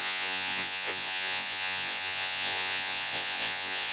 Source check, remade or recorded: remade